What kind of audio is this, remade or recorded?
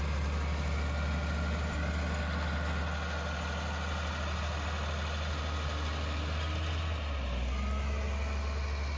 recorded